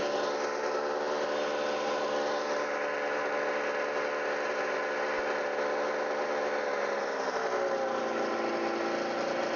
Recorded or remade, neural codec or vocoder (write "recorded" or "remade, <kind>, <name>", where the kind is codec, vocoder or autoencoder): recorded